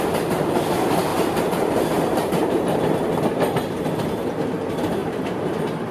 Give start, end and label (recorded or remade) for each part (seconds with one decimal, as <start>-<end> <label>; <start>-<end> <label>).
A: 0.0-1.1 recorded; 1.1-3.2 remade; 3.2-5.0 recorded; 5.0-5.9 remade